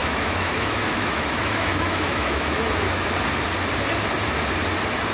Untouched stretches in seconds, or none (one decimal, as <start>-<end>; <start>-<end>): 3.1-5.1